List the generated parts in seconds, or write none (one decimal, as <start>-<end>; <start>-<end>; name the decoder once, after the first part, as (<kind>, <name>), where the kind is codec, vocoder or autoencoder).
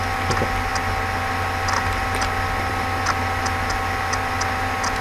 none